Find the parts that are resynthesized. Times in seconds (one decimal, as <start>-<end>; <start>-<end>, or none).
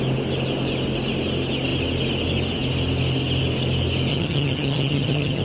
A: 4.1-5.4